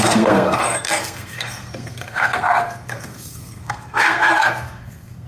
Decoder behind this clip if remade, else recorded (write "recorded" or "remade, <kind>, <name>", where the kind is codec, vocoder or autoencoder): remade, codec, SNAC